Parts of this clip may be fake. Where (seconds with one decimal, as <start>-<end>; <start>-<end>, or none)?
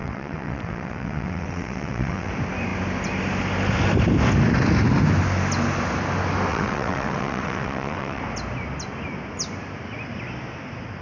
0.0-2.3; 6.5-8.2